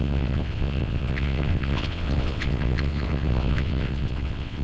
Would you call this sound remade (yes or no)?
yes